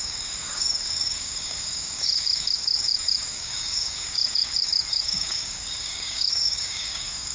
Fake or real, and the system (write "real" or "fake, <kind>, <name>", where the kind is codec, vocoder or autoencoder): fake, codec, DAC